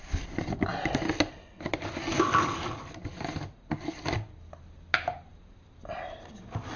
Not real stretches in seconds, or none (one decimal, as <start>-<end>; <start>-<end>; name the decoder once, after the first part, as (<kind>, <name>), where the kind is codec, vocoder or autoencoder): none